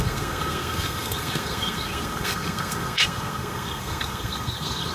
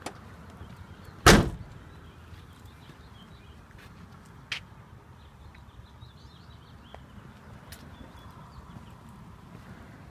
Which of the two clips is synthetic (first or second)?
first